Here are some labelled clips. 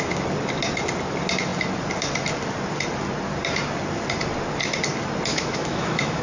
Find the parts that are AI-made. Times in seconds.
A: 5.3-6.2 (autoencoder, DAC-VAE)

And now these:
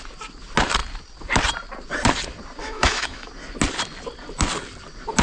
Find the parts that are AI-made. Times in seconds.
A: 2.6-3.3 (autoencoder, DAC-VAE)

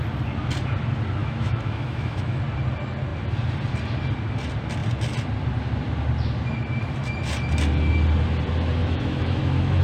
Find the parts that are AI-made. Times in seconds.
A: 1.2-2.4 (autoencoder, DAC-VAE); 8.8-9.8